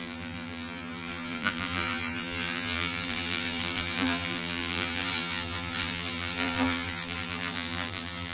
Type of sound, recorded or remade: remade